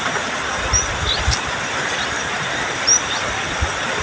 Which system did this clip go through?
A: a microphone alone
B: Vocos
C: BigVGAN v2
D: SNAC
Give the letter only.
C